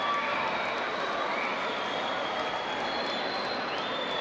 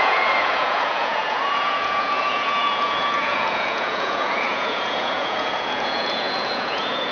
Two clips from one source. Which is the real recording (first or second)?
first